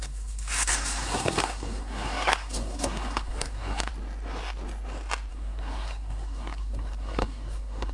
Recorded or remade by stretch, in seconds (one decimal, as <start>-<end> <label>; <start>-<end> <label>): 0.0-3.9 remade; 3.9-5.3 recorded; 5.3-7.9 remade